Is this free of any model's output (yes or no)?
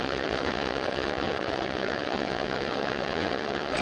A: no